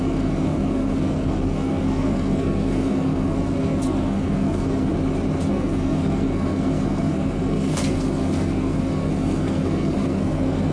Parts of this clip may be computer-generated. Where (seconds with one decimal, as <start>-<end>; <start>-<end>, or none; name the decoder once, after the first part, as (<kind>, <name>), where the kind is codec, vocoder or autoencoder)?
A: 0.0-4.9 (codec, SNAC); 5.5-10.7